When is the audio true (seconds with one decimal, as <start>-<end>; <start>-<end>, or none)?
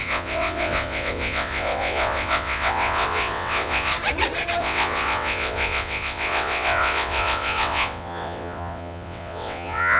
3.9-4.6